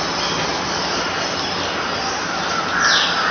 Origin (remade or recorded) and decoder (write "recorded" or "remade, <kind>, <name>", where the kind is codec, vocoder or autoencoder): recorded